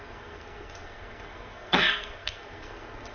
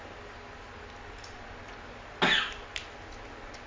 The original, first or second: second